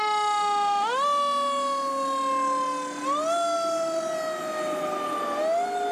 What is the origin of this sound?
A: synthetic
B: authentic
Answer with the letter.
B